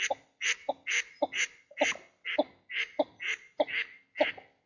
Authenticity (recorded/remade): recorded